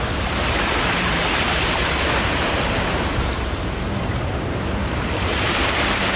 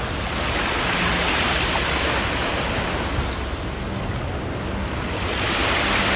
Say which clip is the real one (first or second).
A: second